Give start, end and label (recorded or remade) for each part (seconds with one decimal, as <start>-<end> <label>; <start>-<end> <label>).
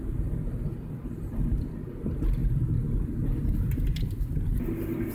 0.0-5.1 recorded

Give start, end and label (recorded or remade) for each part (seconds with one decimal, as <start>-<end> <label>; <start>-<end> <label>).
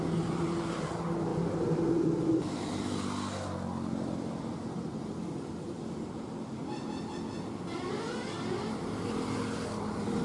0.0-1.3 recorded; 1.3-2.4 remade; 2.4-10.2 recorded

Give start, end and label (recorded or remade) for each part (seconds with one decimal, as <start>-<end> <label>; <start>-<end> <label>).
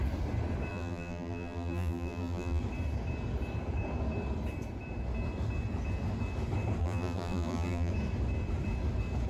0.0-0.7 recorded; 0.7-2.6 remade; 2.6-6.8 recorded; 6.8-7.9 remade; 7.9-9.3 recorded